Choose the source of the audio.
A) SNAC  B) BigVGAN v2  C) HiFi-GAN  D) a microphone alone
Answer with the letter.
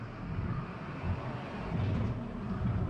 D